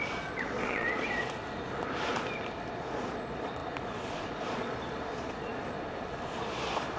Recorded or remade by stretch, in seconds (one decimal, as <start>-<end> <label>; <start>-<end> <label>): 0.0-1.4 remade; 1.4-2.7 recorded; 2.7-5.5 remade; 5.5-6.4 recorded; 6.4-7.0 remade

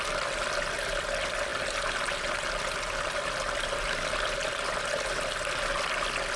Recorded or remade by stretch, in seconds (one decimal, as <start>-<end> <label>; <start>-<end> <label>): 0.0-6.4 recorded

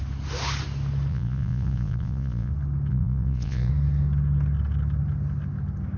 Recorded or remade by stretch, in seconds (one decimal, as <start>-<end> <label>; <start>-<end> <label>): 0.0-1.1 recorded; 1.1-2.5 remade; 2.5-2.9 recorded; 2.9-3.7 remade; 3.7-6.0 recorded

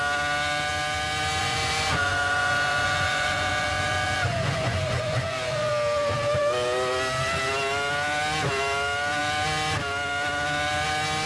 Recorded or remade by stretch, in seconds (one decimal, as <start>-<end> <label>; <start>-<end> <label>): 0.0-1.4 recorded; 1.4-5.7 remade; 5.7-11.3 recorded

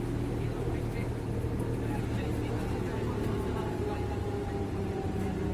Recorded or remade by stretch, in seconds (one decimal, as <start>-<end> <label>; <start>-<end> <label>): 0.0-5.5 recorded

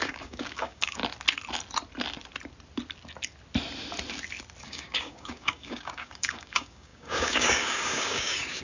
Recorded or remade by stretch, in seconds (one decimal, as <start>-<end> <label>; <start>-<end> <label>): 0.0-1.0 remade; 1.0-4.6 recorded; 4.6-8.6 remade